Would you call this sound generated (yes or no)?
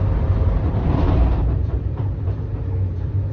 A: no